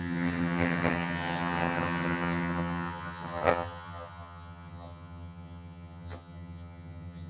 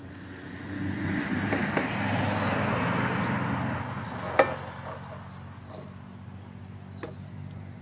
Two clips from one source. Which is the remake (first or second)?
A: first